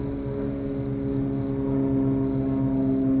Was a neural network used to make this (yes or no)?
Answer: no